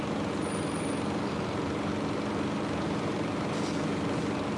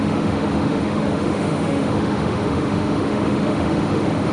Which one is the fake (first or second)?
second